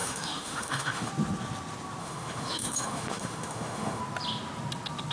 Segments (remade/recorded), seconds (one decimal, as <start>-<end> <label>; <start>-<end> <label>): 0.0-1.1 remade; 1.1-2.0 recorded; 2.0-4.0 remade; 4.0-5.1 recorded